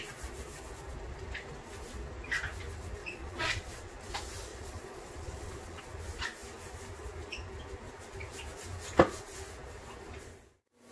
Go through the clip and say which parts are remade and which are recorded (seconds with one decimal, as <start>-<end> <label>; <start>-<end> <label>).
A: 0.0-3.0 recorded; 3.0-3.8 remade; 3.8-4.5 recorded; 4.5-5.8 remade; 5.8-10.9 recorded